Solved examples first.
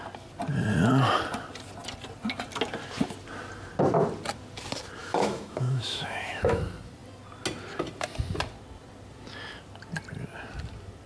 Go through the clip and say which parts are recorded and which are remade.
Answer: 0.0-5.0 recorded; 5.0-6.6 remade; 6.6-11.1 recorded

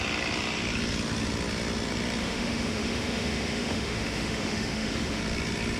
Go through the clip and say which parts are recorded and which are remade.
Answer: 0.0-2.2 recorded; 2.2-5.2 remade; 5.2-5.8 recorded

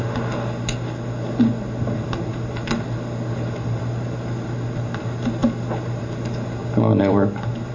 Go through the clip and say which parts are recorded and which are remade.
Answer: 0.0-7.7 recorded